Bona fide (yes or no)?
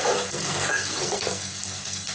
no